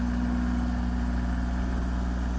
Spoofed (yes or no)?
no